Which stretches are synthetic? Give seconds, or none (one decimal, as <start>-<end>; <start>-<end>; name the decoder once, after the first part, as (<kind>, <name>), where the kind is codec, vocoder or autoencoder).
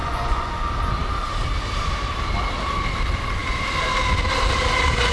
0.0-0.5 (vocoder, Vocos)